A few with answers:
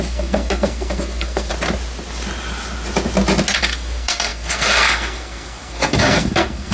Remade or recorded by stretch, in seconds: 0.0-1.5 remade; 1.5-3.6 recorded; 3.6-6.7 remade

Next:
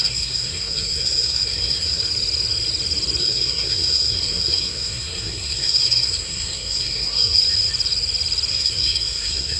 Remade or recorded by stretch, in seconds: 0.0-2.0 remade; 2.0-3.2 recorded; 3.2-7.4 remade; 7.4-8.5 recorded; 8.5-9.6 remade